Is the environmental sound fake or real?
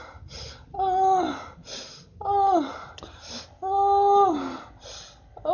real